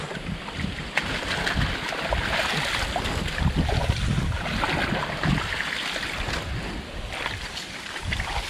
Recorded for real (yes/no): yes